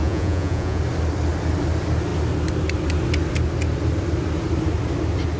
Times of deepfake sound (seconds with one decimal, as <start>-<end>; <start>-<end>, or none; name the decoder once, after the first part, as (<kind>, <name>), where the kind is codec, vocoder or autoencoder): 0.0-0.8 (vocoder, Vocos)

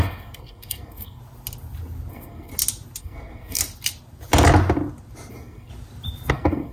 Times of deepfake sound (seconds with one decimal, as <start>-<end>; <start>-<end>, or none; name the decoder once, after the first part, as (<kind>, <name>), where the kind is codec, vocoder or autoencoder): 0.0-1.2 (codec, SNAC); 2.1-2.5; 3.0-3.6; 5.3-5.7; 6.3-6.7

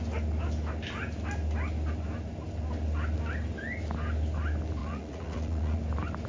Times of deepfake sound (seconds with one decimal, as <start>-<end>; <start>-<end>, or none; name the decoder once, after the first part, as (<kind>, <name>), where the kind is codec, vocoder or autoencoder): 4.8-5.8 (vocoder, Vocos)

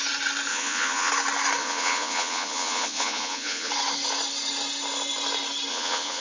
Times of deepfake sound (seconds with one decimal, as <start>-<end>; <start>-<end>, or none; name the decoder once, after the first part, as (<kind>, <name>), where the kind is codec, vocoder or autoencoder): 0.5-1.1 (vocoder, Vocos); 1.6-3.7; 5.7-6.2

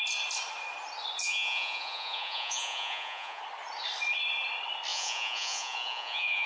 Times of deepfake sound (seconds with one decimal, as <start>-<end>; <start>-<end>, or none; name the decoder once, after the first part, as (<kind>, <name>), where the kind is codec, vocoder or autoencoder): 1.2-3.4 (vocoder, Vocos); 4.9-6.5